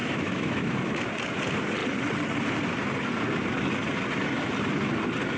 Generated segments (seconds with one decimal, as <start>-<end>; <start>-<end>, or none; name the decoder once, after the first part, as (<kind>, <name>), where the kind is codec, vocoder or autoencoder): 0.0-1.0 (autoencoder, DAC-VAE)